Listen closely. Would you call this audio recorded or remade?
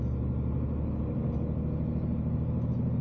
recorded